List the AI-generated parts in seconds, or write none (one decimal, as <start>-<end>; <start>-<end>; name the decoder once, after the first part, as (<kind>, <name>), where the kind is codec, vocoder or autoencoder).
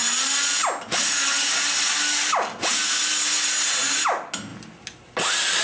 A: none